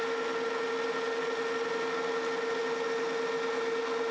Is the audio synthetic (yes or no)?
no